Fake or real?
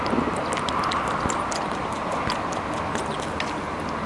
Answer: real